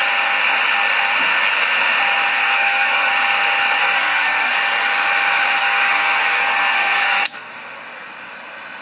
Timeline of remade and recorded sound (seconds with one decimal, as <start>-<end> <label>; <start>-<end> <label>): 0.0-2.3 recorded; 2.3-3.1 remade; 3.1-3.8 recorded; 3.8-4.5 remade; 4.5-5.6 recorded; 5.6-7.5 remade; 7.5-8.8 recorded